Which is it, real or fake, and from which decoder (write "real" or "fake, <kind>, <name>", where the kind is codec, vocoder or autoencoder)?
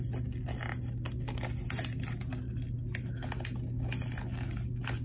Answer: real